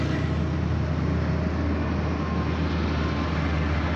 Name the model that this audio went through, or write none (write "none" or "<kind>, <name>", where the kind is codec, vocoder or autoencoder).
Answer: none